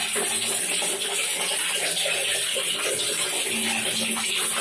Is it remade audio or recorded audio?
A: recorded